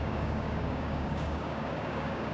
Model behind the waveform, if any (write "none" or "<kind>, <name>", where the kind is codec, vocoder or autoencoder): codec, DAC